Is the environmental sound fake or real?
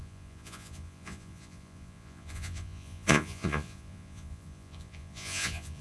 fake